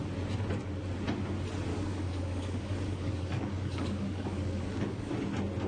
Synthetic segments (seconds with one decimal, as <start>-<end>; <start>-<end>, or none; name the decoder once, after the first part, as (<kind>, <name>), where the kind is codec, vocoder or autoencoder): 1.7-5.1 (codec, DAC)